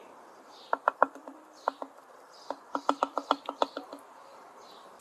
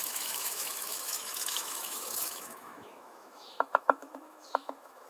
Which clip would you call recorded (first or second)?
first